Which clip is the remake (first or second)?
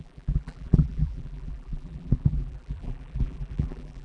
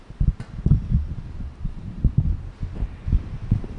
first